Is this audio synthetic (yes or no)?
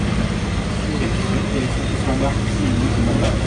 no